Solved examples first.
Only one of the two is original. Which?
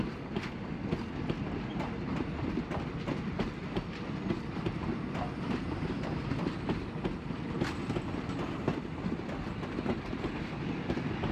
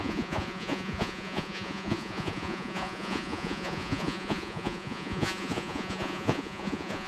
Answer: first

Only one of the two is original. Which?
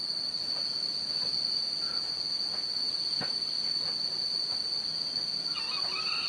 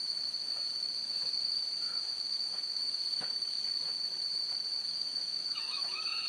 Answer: first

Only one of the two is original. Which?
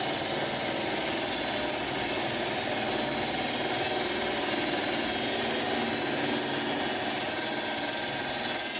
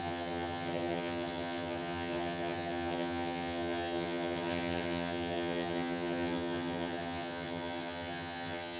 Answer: first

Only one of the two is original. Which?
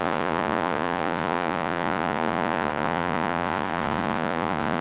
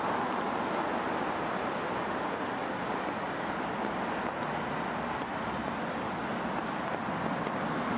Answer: second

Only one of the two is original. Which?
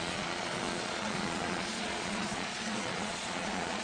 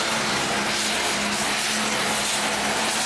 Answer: second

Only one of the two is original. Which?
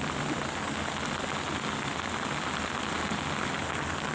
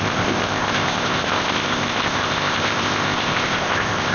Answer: first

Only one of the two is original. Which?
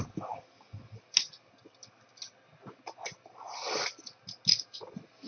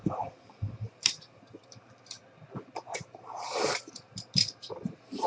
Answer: first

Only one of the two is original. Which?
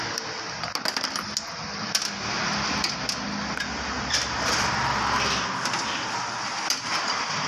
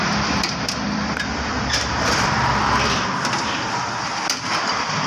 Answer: first